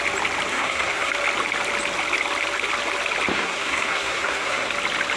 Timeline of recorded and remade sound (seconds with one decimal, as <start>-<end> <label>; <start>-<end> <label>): 0.0-0.5 recorded; 0.5-1.1 remade; 1.1-3.3 recorded; 3.3-4.7 remade; 4.7-5.2 recorded